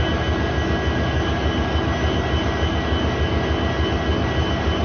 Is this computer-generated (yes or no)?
no